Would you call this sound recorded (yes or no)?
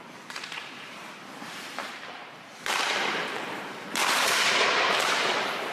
no